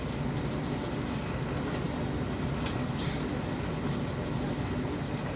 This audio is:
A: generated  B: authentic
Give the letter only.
B